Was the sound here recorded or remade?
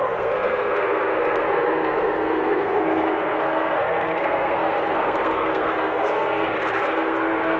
remade